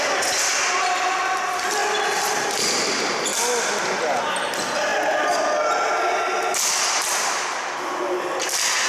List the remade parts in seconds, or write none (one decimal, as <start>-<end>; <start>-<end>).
none